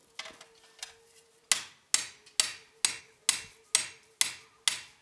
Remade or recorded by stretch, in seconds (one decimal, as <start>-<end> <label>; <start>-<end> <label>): 0.0-5.0 recorded